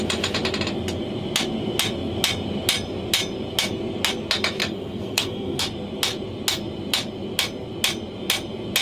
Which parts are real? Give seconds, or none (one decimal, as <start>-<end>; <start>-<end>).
0.0-4.6; 5.6-8.8